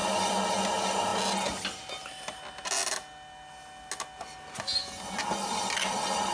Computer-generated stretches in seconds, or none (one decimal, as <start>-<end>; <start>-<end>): none